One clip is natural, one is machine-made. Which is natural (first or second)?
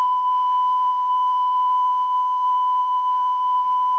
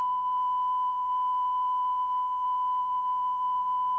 second